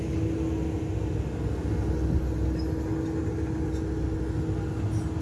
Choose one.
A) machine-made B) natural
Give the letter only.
B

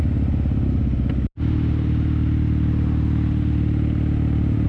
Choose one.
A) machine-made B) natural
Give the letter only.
B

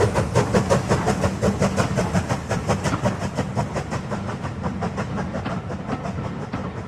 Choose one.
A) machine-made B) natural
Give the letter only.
B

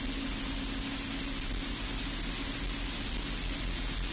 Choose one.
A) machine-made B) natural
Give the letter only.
B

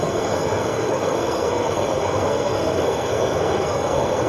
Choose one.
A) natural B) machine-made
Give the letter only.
B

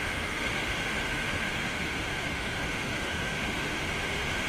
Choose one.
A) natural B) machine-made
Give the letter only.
B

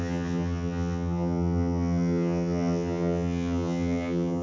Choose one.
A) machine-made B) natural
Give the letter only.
A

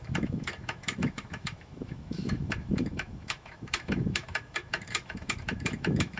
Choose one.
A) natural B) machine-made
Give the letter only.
B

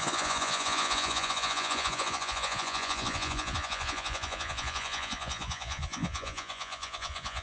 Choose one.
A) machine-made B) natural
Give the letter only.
A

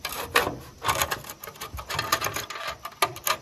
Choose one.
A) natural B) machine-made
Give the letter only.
A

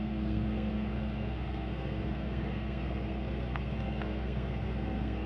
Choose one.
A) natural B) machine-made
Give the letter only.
B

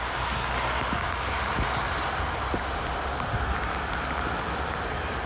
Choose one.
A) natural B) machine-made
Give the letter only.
A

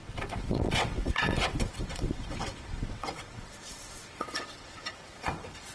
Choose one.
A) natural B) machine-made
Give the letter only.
B